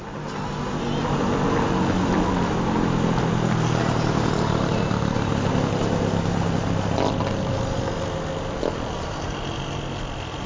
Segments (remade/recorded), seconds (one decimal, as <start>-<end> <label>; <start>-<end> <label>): 0.0-3.8 recorded; 3.8-5.3 remade; 5.3-10.5 recorded